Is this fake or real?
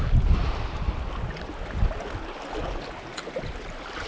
real